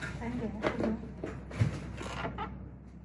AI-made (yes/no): no